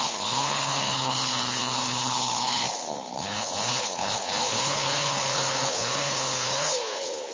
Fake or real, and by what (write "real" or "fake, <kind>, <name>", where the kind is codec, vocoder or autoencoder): fake, codec, HILCodec